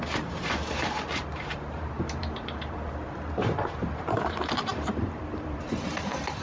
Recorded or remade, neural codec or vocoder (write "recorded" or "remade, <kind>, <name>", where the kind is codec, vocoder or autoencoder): remade, vocoder, BigVGAN v2